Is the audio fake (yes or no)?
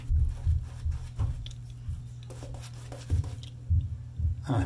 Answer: no